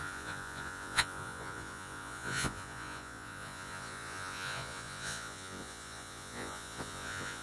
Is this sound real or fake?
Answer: fake